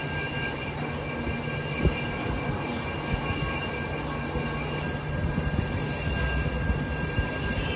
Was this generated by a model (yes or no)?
no